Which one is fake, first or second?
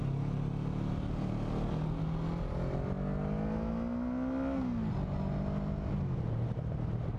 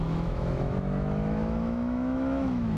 second